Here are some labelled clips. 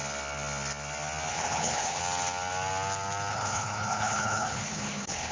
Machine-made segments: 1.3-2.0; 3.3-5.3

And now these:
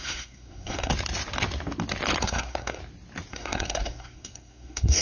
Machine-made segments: 0.0-0.9; 2.2-2.8; 3.3-5.0

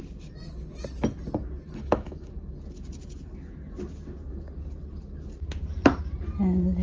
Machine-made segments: 1.8-2.3

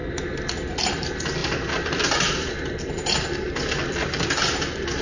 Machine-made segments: none

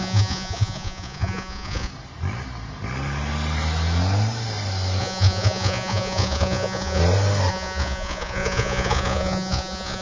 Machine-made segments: 0.0-1.9; 5.0-7.0; 7.5-10.0

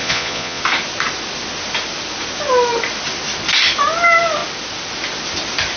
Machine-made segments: 0.0-0.6

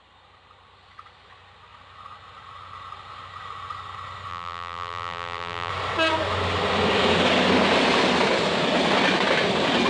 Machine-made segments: 4.3-5.7

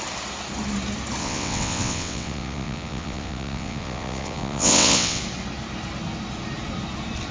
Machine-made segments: 1.2-5.2